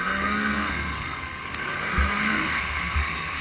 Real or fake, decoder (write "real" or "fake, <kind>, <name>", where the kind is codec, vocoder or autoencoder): fake, codec, SNAC